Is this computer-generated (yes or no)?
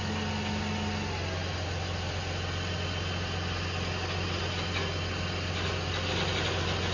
no